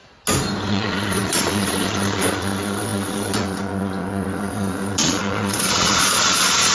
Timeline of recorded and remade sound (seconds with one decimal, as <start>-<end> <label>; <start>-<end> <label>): 0.0-0.7 recorded; 0.7-6.7 remade